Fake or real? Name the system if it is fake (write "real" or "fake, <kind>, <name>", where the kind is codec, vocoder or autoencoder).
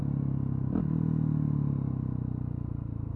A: real